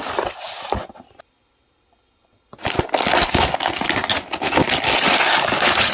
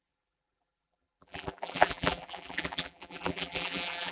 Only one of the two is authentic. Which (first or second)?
first